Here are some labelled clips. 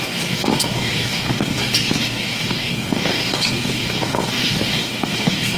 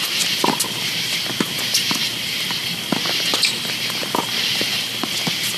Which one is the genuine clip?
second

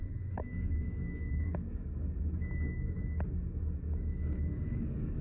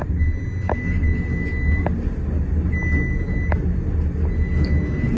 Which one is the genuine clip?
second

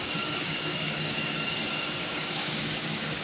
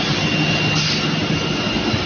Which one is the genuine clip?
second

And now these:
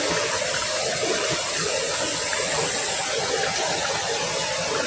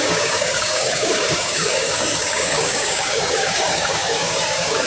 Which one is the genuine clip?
first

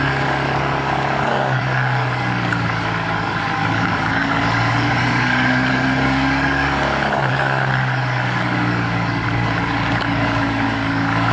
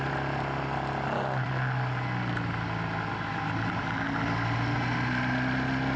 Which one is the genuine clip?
second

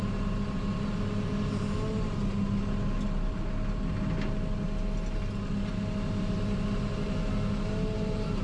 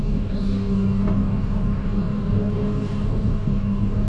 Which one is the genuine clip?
first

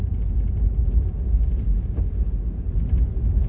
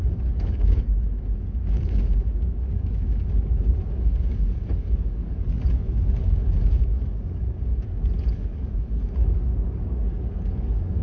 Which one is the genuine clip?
first